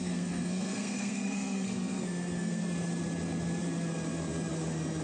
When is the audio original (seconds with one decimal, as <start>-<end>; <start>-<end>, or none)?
2.6-5.0